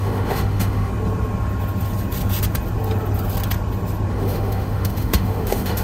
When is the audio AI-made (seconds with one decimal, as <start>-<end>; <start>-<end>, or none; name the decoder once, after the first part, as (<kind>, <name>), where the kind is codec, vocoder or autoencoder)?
0.0-0.9 (autoencoder, DAC-VAE); 4.1-5.8